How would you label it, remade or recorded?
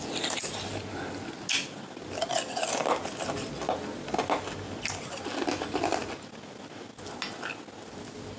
recorded